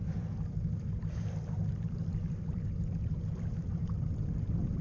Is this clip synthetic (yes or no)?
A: yes